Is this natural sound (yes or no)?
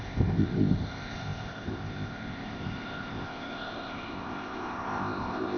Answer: no